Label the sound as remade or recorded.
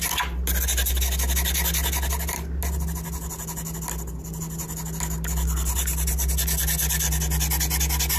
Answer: recorded